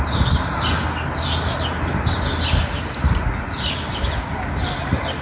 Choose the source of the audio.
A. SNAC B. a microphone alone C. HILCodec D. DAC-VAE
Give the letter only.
B